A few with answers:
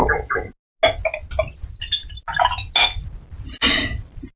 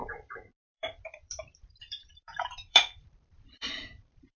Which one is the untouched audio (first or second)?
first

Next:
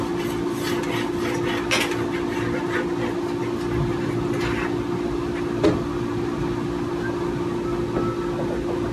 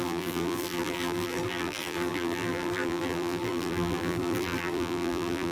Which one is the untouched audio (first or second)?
first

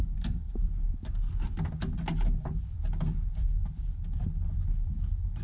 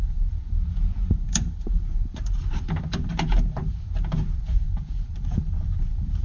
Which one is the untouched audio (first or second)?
first